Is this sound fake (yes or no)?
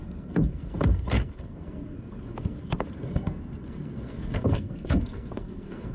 yes